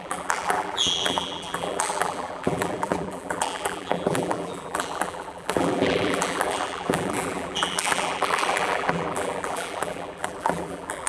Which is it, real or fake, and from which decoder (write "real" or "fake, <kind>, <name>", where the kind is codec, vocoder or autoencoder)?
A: fake, vocoder, BigVGAN v2